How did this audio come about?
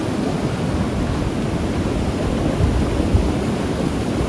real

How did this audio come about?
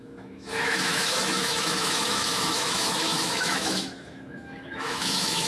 fake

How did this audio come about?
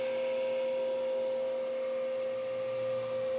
real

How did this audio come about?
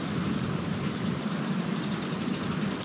real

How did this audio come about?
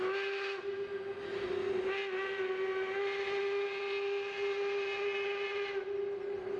real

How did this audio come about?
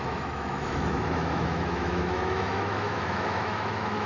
fake